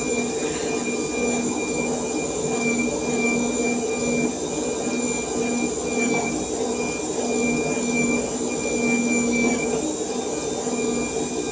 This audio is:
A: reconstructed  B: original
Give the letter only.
B